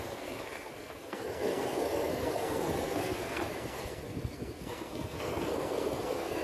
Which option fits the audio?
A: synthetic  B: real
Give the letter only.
A